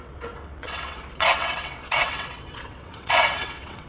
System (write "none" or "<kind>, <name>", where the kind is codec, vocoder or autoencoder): vocoder, WaveNeXt